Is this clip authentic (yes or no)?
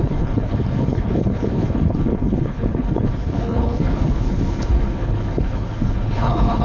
no